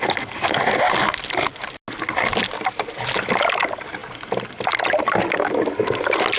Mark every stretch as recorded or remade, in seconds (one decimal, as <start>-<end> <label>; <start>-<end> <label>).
0.0-6.4 recorded